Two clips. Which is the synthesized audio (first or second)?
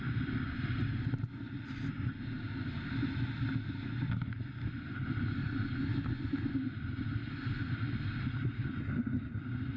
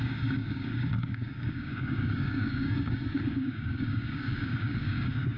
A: second